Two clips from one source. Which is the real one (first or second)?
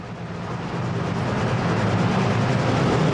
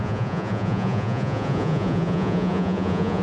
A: first